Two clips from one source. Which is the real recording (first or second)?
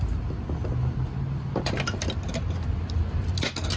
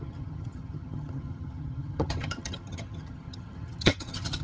first